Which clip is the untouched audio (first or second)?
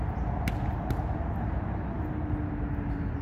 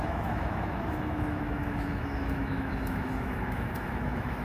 first